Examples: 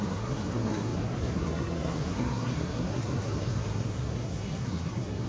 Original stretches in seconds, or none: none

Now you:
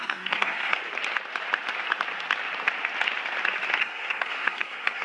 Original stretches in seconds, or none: 0.8-3.8

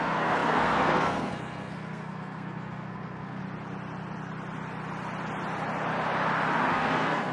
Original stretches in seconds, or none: 3.4-6.7

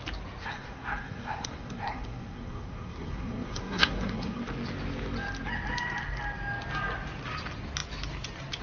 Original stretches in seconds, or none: 0.0-0.4; 4.4-8.6